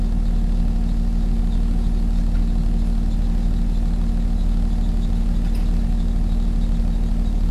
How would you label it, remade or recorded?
recorded